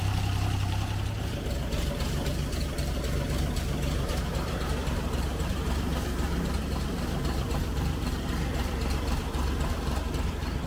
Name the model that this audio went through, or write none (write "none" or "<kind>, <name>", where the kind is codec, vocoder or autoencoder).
vocoder, BigVGAN v2